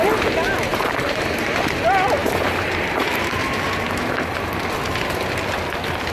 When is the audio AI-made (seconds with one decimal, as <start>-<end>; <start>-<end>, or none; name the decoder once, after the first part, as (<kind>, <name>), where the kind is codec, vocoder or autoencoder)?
0.7-1.4 (vocoder, BigVGAN v2); 2.2-2.8